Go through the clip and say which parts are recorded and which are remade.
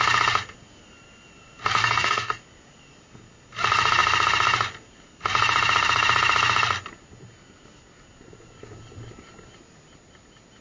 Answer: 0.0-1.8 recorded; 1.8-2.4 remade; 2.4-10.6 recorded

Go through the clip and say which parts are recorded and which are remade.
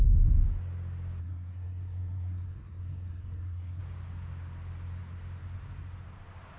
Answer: 0.0-1.2 recorded; 1.2-3.8 remade; 3.8-6.6 recorded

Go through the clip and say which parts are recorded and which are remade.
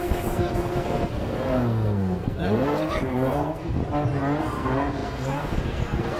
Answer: 0.0-3.8 remade; 3.8-4.4 recorded; 4.4-6.2 remade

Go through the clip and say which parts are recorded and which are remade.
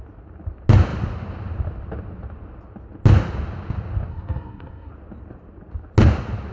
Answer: 0.0-4.1 recorded; 4.1-4.9 remade; 4.9-6.5 recorded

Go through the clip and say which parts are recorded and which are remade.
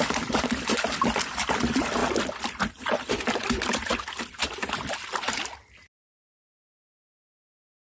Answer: 0.0-7.8 recorded